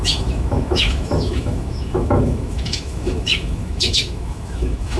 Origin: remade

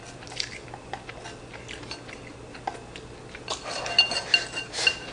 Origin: recorded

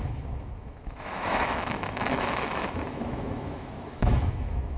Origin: remade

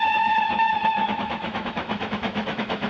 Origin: remade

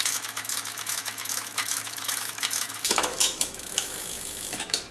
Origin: remade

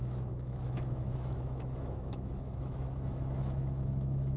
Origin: remade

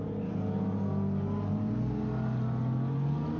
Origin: recorded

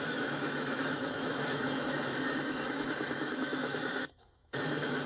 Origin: remade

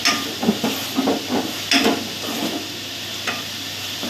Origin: recorded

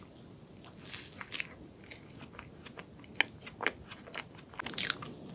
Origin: recorded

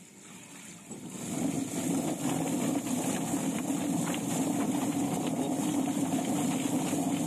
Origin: recorded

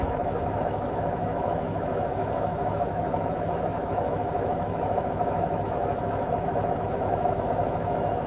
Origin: remade